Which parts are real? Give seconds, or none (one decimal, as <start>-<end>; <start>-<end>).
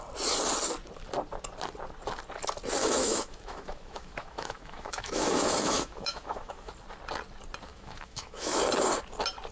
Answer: 0.0-2.8; 6.7-7.7; 8.6-9.5